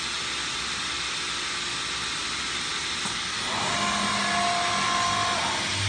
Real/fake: real